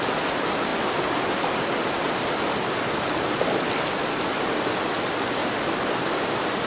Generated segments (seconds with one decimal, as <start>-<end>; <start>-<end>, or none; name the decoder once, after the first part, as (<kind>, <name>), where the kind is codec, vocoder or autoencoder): none